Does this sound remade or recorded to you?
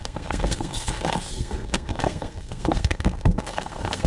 remade